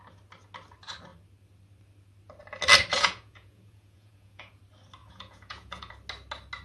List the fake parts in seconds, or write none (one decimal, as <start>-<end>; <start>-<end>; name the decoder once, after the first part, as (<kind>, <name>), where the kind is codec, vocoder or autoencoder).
2.9-4.6 (vocoder, Vocos); 5.0-5.9